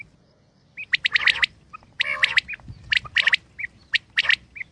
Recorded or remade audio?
recorded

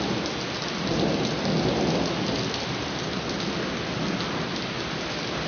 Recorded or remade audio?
recorded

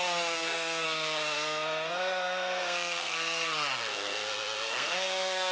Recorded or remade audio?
remade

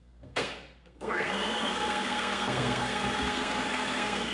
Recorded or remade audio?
remade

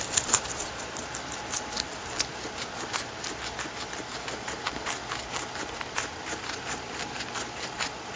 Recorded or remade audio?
remade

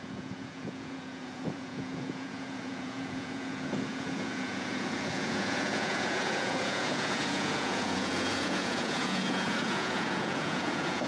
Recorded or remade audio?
remade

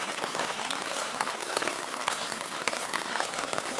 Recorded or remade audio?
remade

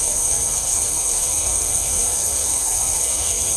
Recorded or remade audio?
remade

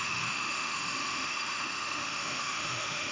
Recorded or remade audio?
remade